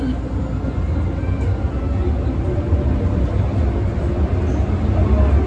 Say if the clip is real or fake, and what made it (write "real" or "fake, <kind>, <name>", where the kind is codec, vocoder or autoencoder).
real